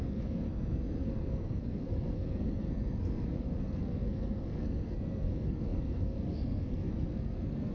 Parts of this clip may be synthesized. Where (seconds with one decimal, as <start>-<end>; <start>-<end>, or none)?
0.0-7.7